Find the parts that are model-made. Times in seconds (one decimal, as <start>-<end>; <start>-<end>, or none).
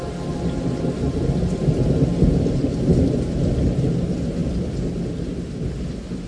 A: none